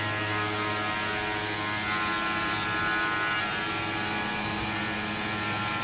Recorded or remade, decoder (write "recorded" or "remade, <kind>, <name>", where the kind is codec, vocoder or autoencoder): recorded